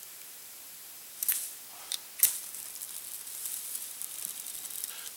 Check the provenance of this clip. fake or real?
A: real